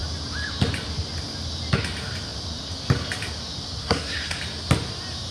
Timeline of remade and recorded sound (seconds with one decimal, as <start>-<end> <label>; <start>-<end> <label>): 0.0-3.8 recorded; 3.8-4.4 remade; 4.4-5.3 recorded